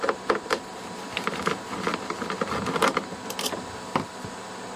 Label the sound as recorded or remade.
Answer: recorded